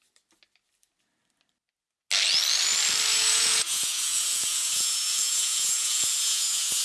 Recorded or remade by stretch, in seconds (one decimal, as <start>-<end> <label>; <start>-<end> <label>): 0.0-3.1 recorded; 3.1-6.8 remade